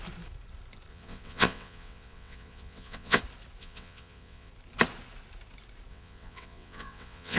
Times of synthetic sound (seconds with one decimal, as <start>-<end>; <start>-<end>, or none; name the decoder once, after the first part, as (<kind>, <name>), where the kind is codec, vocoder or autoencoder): 0.9-3.2 (vocoder, WaveNeXt); 3.6-4.5; 5.9-7.4